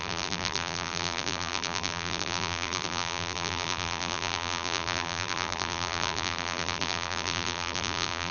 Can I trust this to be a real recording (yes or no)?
no